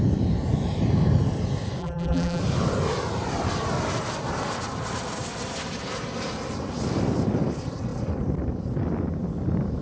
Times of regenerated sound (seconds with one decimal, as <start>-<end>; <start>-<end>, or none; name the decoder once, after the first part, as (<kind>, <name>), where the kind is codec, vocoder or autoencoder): 1.8-2.4 (vocoder, BigVGAN v2)